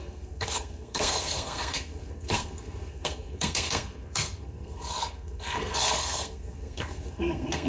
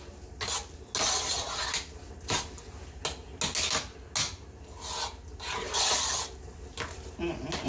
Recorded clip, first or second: second